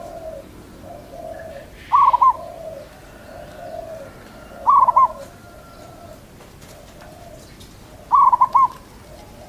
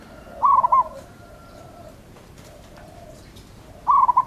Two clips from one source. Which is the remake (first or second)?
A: second